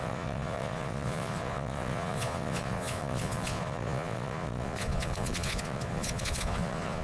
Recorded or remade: remade